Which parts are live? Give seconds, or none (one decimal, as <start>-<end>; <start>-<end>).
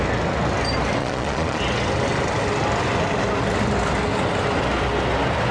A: 0.0-1.0; 1.6-5.5